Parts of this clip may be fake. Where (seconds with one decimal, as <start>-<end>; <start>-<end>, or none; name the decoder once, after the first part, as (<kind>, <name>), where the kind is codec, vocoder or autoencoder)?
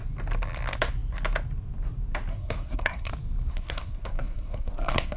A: 2.3-3.1 (codec, SNAC); 3.5-5.2